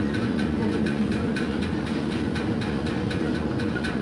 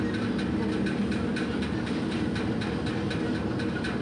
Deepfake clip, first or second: first